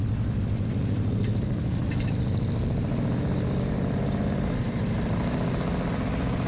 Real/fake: fake